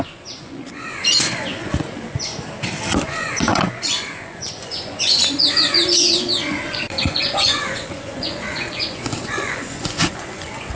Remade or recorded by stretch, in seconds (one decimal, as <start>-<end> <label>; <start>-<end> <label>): 0.0-2.3 remade; 2.3-3.0 recorded; 3.0-10.8 remade